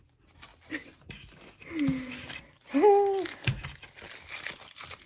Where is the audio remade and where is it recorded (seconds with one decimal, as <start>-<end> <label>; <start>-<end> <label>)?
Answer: 0.0-5.1 recorded